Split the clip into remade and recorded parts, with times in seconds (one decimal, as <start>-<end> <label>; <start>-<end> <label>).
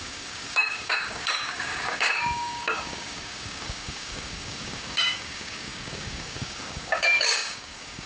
0.0-8.1 remade